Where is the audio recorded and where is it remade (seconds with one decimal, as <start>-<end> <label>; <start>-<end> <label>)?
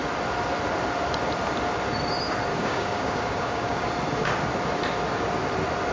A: 0.0-2.5 recorded; 2.5-3.9 remade; 3.9-5.9 recorded